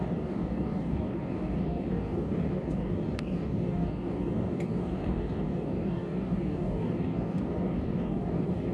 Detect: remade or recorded remade